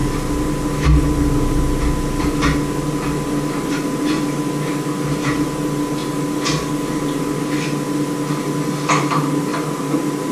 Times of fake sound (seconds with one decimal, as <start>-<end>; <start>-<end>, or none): none